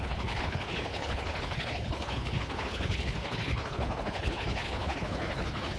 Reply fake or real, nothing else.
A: fake